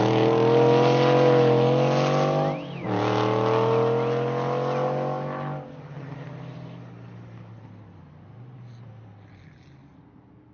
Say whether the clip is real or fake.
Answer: real